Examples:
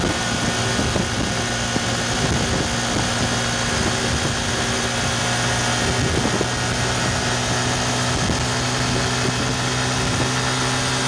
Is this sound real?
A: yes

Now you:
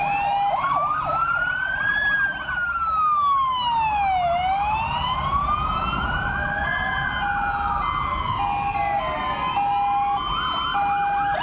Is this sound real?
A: yes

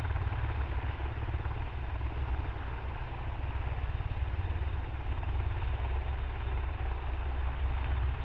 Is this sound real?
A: yes